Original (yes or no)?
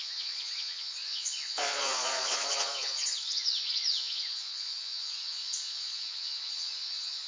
no